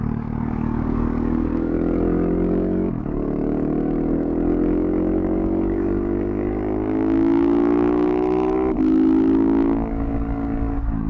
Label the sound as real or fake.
fake